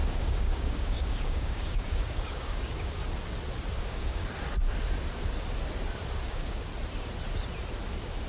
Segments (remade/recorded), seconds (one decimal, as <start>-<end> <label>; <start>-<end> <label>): 0.0-3.0 remade; 3.0-3.8 recorded; 3.8-4.2 remade; 4.2-6.3 recorded; 6.3-6.7 remade; 6.7-8.3 recorded